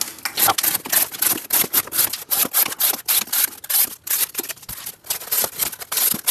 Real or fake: real